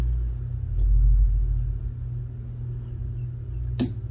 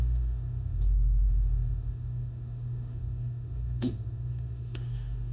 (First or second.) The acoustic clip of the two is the first